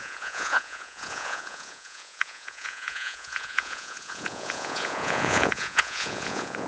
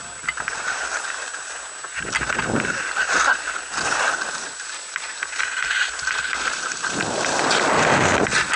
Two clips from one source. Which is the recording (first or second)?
second